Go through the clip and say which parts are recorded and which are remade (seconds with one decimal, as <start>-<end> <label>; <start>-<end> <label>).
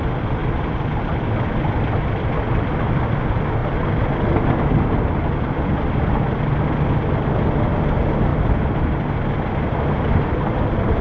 0.0-0.4 recorded; 0.4-2.4 remade; 2.4-3.6 recorded; 3.6-4.5 remade; 4.5-8.3 recorded; 8.3-9.2 remade; 9.2-11.0 recorded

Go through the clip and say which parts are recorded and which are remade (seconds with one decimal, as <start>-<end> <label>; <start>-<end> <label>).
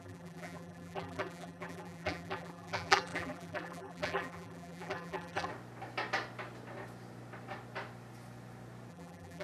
0.0-5.5 remade; 5.5-8.9 recorded; 8.9-9.4 remade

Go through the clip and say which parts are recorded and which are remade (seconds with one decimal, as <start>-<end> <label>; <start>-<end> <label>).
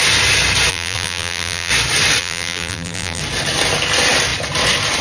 0.0-0.7 recorded; 0.7-1.7 remade; 1.7-2.2 recorded; 2.2-3.2 remade; 3.2-5.0 recorded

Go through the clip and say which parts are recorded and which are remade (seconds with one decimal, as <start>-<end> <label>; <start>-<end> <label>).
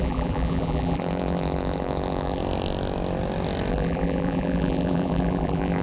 0.0-2.4 remade; 2.4-3.7 recorded; 3.7-5.8 remade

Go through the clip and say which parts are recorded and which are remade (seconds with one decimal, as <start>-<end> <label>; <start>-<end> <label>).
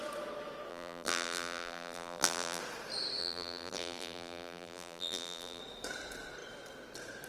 0.0-0.7 recorded; 0.7-2.6 remade; 2.6-3.2 recorded; 3.2-5.6 remade; 5.6-7.3 recorded